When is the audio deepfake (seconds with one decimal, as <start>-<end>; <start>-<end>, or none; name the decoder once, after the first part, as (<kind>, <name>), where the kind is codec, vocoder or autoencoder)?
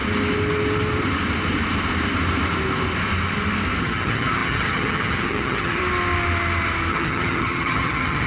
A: 3.8-5.8 (vocoder, HiFi-GAN); 6.9-8.3